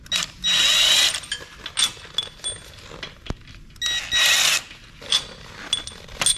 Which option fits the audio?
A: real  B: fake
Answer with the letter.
A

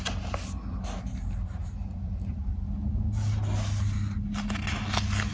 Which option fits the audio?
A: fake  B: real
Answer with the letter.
B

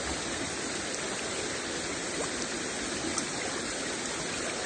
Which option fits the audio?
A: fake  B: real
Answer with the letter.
B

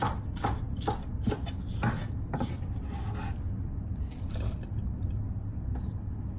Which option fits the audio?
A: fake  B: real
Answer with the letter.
B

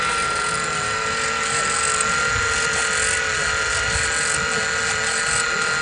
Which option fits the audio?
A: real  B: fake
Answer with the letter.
A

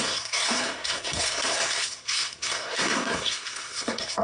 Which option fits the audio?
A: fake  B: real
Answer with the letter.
A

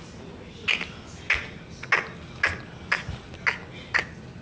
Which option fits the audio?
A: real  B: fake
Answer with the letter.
A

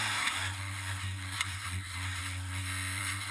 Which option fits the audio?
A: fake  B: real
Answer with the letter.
A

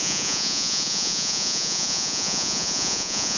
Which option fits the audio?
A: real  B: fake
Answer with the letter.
B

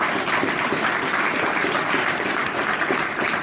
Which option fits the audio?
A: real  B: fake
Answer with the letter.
A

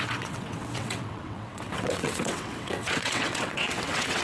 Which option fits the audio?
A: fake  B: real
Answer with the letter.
A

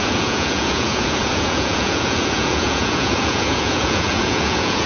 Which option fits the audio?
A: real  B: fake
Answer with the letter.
B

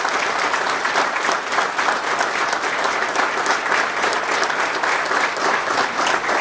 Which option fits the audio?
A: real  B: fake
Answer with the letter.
A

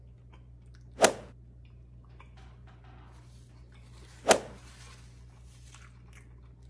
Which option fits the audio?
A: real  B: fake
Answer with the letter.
A